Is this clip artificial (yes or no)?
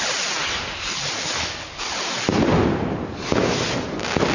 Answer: no